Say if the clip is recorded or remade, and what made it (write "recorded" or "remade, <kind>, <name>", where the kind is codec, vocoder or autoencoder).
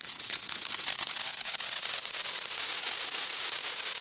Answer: remade, vocoder, Vocos